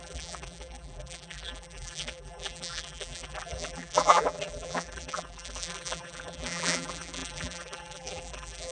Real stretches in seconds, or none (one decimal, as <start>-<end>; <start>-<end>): none